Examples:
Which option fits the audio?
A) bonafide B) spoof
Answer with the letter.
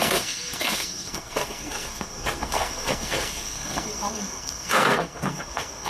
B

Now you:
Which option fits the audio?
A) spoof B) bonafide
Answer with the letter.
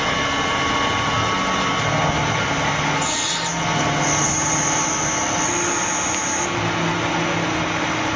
B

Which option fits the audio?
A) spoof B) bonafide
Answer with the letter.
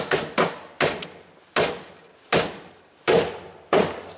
B